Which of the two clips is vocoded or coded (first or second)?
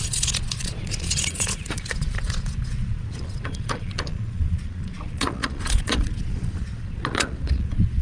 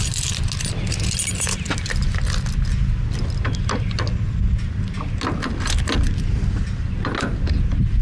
first